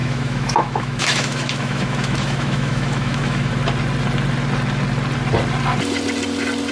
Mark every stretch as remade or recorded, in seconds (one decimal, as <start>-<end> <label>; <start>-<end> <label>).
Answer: 0.0-3.5 remade; 3.5-6.7 recorded